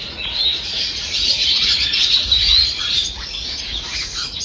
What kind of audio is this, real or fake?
fake